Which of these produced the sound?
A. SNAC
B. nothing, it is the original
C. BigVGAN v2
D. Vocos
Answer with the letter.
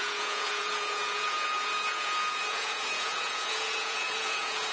D